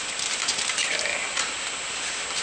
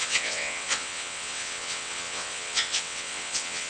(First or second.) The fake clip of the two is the second